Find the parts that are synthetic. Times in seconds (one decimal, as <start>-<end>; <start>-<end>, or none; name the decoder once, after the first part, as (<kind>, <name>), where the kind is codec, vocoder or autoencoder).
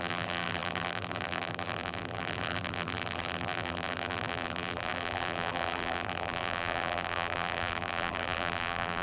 0.0-9.0 (vocoder, BigVGAN v2)